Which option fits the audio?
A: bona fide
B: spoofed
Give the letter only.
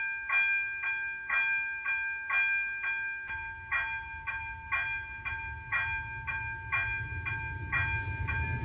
A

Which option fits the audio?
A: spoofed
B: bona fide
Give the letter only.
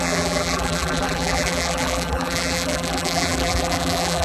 A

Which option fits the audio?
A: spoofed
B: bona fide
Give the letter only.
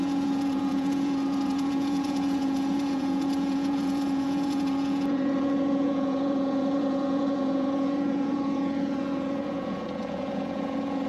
A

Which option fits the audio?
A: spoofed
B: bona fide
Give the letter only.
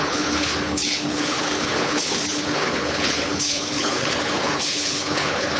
A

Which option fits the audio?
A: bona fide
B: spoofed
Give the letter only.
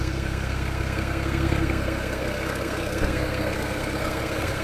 B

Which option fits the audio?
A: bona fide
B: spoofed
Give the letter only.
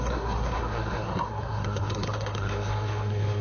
B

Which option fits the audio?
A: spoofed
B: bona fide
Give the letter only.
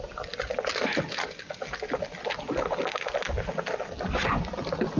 B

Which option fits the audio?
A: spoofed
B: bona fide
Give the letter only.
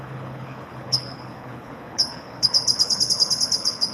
A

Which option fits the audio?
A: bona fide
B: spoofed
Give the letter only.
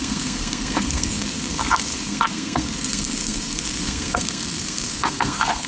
B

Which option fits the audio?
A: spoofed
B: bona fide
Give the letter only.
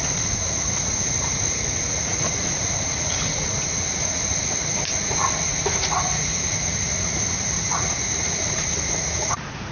A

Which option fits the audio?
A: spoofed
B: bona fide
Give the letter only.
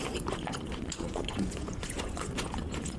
A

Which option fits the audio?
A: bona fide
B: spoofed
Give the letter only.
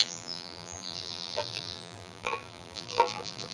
B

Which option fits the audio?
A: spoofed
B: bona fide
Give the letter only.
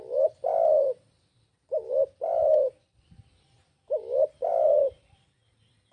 A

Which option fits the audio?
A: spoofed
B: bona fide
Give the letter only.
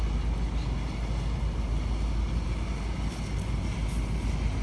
B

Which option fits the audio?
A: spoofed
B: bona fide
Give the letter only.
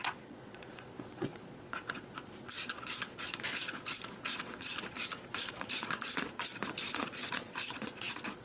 A